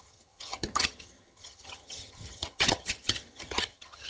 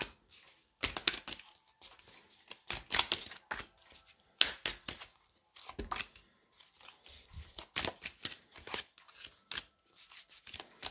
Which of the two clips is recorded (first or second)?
second